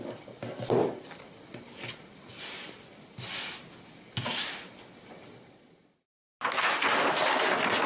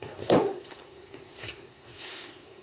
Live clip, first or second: first